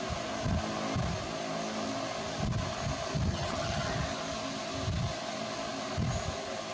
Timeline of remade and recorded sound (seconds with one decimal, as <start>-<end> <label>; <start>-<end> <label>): 0.0-3.3 recorded; 3.3-3.9 remade; 3.9-6.7 recorded